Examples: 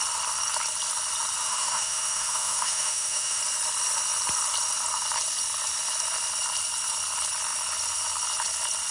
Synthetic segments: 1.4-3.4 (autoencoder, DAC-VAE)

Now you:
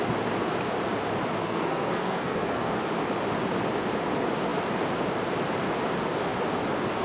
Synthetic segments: 1.4-2.9 (codec, SNAC)

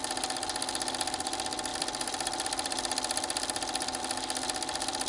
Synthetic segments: 1.7-4.0 (vocoder, BigVGAN v2)

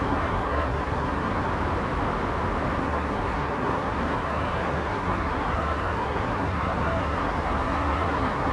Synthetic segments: 0.0-1.5 (codec, SNAC); 2.8-8.5

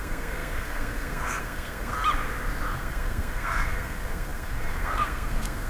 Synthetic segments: 0.0-1.9 (codec, SNAC); 2.7-5.7